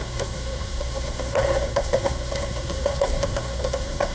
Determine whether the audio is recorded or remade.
remade